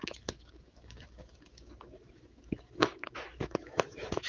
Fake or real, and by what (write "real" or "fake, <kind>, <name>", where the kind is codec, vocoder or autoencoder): fake, autoencoder, DAC-VAE